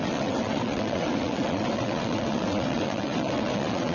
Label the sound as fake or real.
fake